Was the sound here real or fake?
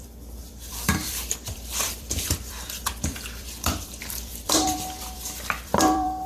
fake